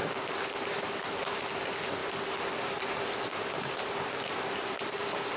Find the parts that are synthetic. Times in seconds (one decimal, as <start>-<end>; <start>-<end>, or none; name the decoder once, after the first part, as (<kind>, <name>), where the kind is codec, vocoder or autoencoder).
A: 2.0-5.4 (vocoder, BigVGAN v2)